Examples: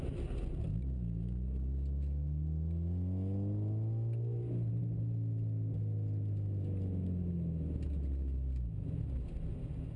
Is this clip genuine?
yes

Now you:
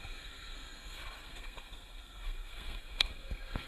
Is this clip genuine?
no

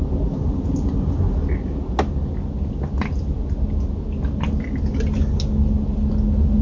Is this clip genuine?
yes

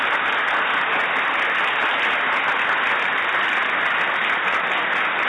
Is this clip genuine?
yes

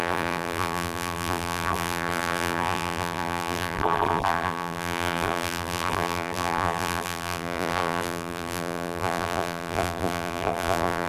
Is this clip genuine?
no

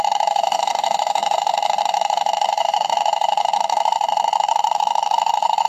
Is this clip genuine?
no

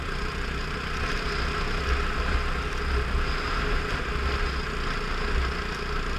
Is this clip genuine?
yes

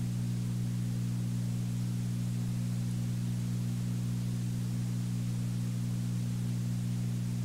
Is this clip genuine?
yes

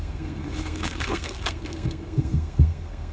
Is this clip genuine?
no